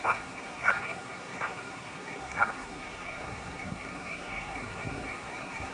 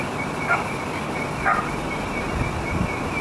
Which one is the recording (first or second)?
second